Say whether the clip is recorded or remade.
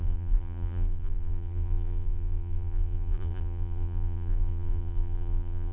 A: remade